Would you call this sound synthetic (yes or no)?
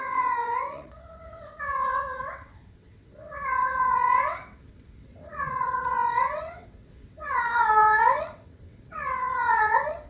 yes